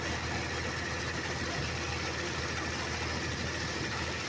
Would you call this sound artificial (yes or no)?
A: no